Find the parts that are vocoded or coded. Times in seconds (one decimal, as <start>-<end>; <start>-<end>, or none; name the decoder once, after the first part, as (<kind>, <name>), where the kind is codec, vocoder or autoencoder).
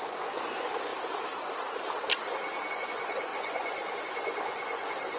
0.0-0.9 (vocoder, Vocos); 2.7-5.2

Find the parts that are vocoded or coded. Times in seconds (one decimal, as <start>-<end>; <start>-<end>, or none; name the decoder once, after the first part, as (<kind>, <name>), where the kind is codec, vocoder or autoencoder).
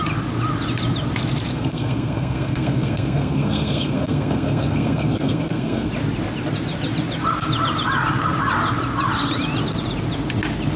1.5-5.9 (codec, SNAC)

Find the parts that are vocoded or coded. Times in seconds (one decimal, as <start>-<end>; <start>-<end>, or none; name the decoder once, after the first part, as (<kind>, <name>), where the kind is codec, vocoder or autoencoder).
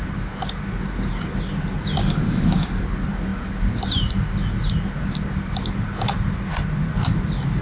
2.0-2.8 (autoencoder, DAC-VAE)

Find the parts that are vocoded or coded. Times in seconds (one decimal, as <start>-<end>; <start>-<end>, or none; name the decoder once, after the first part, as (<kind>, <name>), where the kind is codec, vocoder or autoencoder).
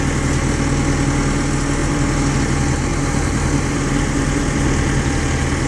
1.8-2.4 (vocoder, BigVGAN v2); 2.9-4.4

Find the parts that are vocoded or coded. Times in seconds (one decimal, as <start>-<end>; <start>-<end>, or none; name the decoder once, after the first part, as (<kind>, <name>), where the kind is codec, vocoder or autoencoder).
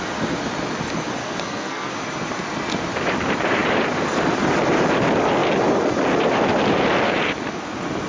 1.2-1.9 (codec, SNAC)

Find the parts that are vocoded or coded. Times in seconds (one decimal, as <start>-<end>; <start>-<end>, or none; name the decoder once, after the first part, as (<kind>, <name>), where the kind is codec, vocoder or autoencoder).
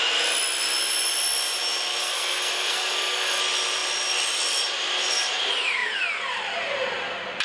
2.0-3.4 (codec, SNAC)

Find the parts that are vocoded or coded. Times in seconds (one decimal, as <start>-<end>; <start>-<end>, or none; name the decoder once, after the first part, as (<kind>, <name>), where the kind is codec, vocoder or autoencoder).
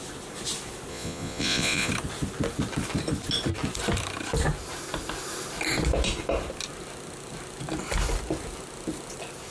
0.9-1.9 (vocoder, Vocos)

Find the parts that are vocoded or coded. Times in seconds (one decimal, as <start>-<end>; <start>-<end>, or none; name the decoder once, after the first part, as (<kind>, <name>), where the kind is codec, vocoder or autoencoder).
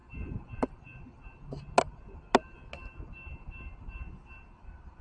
none